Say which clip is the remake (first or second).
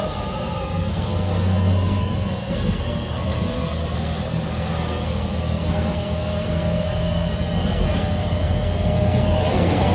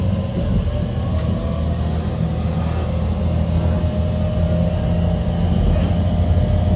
first